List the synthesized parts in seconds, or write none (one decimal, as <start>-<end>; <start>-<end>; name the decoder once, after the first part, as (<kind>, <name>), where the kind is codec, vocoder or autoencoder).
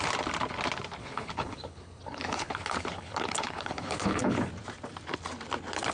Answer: 1.0-4.5 (codec, HILCodec)